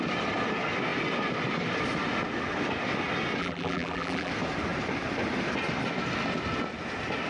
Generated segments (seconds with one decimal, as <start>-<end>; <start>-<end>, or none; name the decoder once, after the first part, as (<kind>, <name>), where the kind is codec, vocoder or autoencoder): 3.4-4.3 (vocoder, BigVGAN v2)